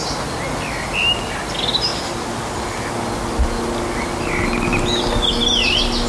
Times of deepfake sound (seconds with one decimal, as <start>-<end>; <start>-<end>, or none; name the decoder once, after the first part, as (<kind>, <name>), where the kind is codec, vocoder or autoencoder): 1.9-2.9 (vocoder, BigVGAN v2); 4.7-5.3